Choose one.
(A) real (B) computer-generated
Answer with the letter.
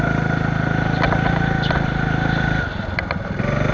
A